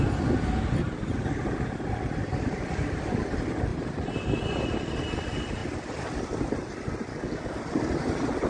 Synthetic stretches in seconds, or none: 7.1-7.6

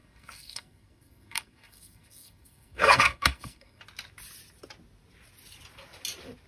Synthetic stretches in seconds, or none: 0.0-3.8